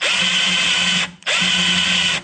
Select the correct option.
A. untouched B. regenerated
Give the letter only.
A